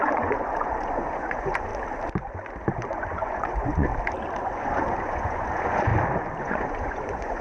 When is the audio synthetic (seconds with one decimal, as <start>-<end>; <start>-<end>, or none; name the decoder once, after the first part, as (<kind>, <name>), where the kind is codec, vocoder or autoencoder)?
0.0-1.7 (vocoder, Vocos); 2.9-3.9; 4.4-5.9; 6.4-7.4